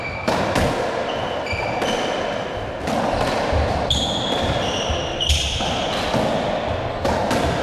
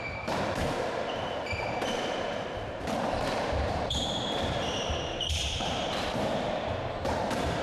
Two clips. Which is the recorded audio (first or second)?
first